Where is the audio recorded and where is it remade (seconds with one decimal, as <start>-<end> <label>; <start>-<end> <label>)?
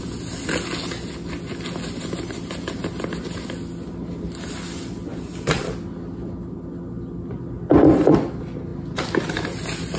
0.0-10.0 recorded